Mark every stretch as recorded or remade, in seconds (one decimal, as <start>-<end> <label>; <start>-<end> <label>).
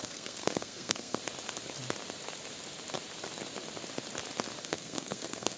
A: 0.0-1.2 remade; 1.2-4.6 recorded; 4.6-5.6 remade